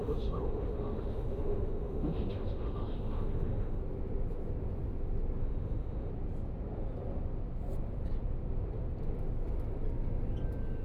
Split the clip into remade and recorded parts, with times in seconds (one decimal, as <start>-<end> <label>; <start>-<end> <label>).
0.0-3.8 remade; 3.8-5.4 recorded; 5.4-6.1 remade; 6.1-10.8 recorded